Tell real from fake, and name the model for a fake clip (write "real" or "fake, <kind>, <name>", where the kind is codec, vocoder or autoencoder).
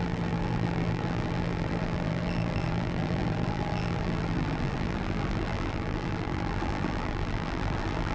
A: fake, vocoder, BigVGAN v2